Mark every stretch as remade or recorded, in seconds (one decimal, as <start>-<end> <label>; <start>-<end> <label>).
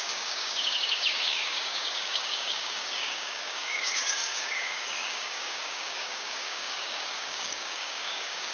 0.0-8.5 remade